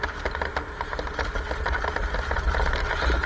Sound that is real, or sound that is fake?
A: real